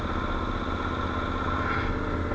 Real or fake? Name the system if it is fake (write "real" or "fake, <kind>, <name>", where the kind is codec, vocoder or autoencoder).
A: real